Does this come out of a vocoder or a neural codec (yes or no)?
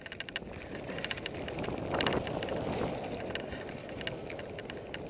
no